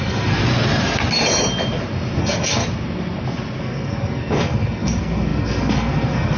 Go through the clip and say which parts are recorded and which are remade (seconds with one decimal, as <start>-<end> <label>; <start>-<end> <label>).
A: 0.0-0.4 remade; 0.4-2.2 recorded; 2.2-2.6 remade; 2.6-3.6 recorded; 3.6-6.4 remade

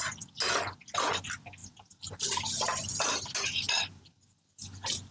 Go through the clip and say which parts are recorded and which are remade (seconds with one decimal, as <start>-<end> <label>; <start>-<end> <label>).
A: 0.0-1.6 recorded; 1.6-3.2 remade; 3.2-5.1 recorded

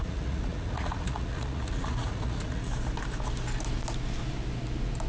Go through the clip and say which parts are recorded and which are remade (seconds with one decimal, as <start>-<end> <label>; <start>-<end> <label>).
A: 0.0-2.7 remade; 2.7-5.1 recorded

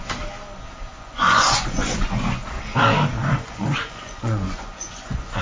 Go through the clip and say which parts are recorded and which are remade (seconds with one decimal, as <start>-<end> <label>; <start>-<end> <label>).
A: 0.0-0.9 recorded; 0.9-2.6 remade; 2.6-3.3 recorded; 3.3-5.4 remade

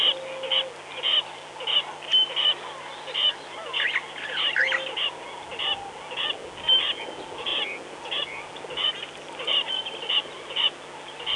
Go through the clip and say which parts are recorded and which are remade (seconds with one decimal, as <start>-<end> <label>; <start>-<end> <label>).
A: 0.0-11.4 recorded

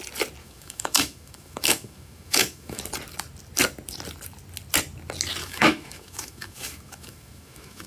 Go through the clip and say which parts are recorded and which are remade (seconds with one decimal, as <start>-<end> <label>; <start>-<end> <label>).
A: 0.0-0.4 recorded; 0.4-2.8 remade; 2.8-5.4 recorded; 5.4-7.9 remade